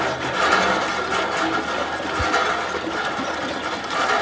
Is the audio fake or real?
real